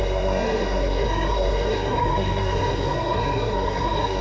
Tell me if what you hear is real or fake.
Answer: fake